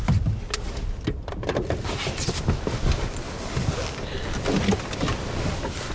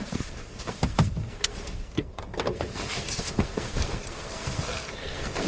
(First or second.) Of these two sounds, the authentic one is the first